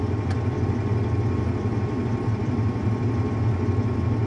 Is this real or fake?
real